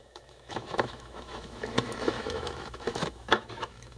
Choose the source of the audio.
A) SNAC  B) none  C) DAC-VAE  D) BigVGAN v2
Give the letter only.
C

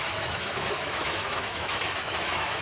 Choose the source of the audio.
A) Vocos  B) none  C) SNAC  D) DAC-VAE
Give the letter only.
D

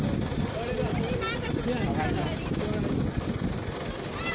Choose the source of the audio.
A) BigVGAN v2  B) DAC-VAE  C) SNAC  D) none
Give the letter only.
D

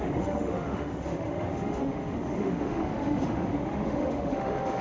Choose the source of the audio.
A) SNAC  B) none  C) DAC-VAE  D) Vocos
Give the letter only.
C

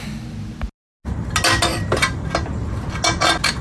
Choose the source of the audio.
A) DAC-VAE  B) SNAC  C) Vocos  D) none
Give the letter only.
D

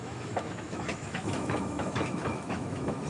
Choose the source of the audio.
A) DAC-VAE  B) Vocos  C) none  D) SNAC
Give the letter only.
A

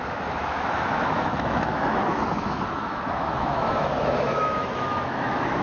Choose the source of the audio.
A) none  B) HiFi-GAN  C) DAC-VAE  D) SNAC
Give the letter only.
C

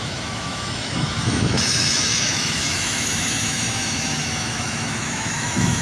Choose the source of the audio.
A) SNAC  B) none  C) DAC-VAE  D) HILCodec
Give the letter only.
C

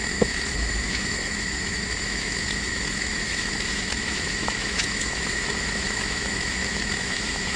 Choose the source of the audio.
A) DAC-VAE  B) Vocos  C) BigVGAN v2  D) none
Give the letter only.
A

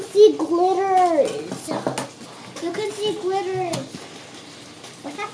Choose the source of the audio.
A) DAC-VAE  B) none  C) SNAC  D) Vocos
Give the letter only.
B